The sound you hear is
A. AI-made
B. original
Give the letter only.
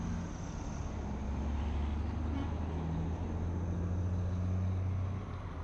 B